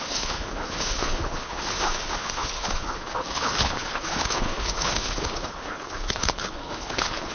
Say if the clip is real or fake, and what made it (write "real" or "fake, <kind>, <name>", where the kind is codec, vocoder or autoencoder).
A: fake, codec, HILCodec